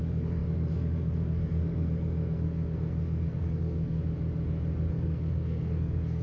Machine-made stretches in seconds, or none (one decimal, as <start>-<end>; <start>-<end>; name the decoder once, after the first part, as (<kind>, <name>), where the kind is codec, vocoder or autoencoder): 0.0-4.0 (codec, SNAC); 4.9-6.2